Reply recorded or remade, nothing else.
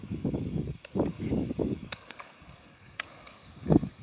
remade